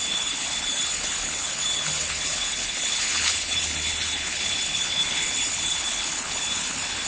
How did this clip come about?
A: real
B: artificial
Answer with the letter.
B